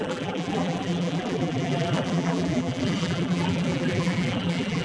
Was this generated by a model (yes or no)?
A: yes